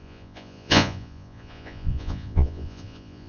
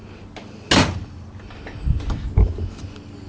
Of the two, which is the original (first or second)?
second